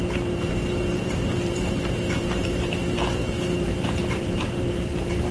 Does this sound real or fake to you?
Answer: fake